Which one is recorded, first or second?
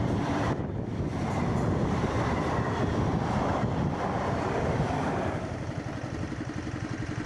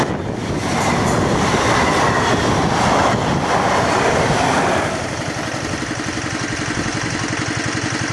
second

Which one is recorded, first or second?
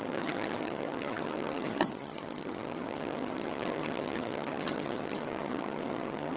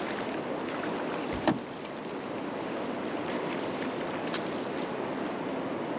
second